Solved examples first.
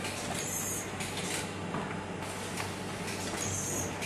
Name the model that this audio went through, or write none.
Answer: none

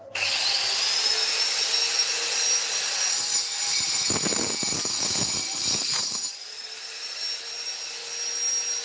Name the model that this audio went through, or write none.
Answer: none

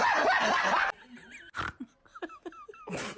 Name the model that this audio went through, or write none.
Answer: none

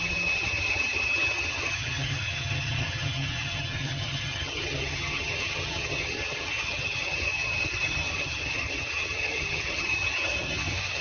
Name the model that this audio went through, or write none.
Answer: vocoder, HiFi-GAN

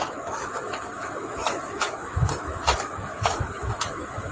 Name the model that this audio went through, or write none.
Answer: autoencoder, DAC-VAE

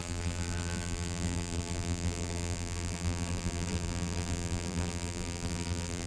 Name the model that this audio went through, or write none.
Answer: vocoder, BigVGAN v2